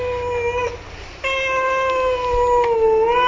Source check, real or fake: real